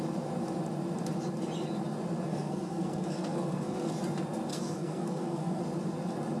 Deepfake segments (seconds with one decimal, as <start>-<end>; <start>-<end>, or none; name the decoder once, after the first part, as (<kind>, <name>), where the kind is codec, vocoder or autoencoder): 2.3-3.9 (codec, SNAC); 4.5-5.6

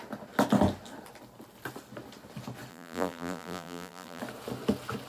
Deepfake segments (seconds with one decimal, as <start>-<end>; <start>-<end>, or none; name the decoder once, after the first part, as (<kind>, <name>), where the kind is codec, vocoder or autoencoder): 2.7-4.2 (vocoder, BigVGAN v2)

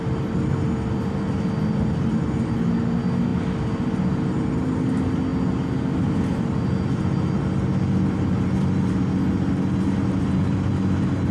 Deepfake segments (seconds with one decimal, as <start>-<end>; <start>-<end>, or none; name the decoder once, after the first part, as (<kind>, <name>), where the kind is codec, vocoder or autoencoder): none

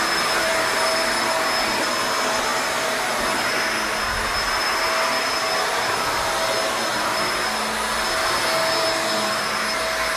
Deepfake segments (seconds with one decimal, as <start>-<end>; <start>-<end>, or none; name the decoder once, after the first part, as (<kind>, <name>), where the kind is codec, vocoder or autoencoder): none